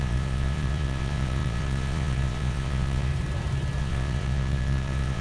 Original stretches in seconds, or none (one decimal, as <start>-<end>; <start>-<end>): 3.1-3.8